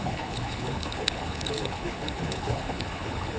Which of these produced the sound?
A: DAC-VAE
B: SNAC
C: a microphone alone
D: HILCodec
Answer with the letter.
D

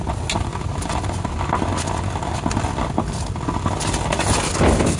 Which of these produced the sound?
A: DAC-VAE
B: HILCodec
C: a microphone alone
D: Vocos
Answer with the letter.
C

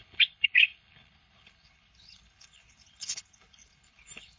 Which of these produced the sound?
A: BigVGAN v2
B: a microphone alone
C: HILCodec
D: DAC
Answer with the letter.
C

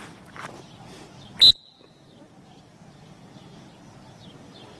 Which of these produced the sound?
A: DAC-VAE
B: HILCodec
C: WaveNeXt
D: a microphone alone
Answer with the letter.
D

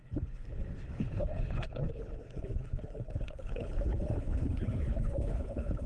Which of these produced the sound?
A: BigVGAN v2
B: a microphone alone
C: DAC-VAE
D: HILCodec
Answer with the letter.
D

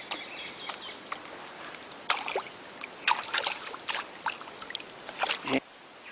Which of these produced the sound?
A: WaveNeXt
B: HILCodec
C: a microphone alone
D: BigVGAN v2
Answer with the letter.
C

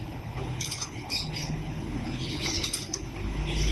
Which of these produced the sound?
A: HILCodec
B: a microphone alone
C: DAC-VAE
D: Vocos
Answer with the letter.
A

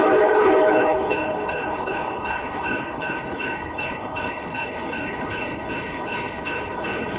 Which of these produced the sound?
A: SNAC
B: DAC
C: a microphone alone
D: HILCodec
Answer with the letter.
D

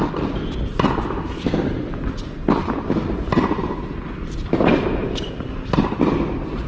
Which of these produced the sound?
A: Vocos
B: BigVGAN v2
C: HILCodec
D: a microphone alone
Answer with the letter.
D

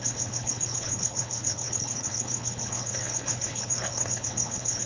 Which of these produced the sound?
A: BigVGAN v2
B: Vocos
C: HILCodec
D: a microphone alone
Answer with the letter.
C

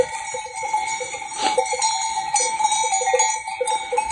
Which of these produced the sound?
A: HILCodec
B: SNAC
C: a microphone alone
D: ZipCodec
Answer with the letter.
C